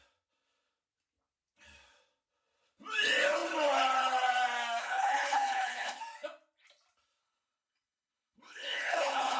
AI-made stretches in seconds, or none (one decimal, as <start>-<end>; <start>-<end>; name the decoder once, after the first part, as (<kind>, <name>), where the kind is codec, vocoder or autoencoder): 4.8-6.0 (codec, HILCodec); 7.2-9.4